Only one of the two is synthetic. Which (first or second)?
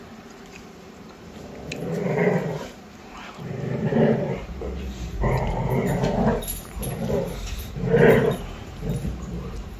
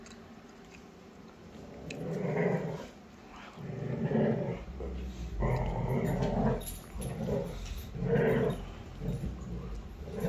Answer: first